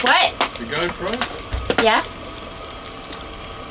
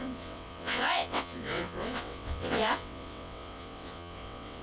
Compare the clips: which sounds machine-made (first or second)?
second